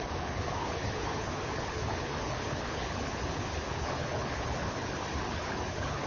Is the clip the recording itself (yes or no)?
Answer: no